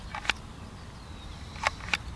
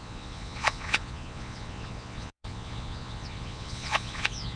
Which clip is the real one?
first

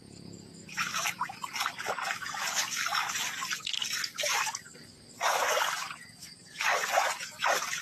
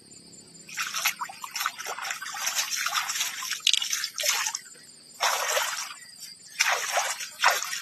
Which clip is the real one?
second